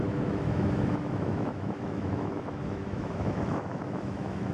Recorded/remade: remade